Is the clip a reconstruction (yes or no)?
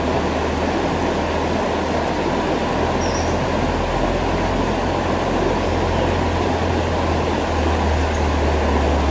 no